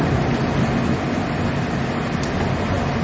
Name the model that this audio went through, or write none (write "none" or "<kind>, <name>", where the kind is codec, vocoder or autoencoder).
none